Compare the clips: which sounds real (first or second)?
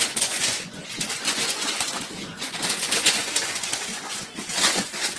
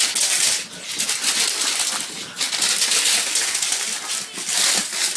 second